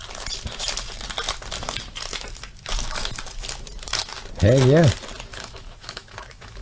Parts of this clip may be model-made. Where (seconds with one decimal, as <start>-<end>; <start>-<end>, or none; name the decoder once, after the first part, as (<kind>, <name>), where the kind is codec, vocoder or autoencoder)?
5.3-6.6 (autoencoder, DAC-VAE)